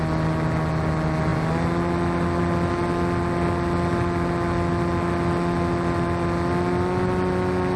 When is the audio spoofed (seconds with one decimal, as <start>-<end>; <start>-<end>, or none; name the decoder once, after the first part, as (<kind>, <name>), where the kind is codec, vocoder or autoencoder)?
none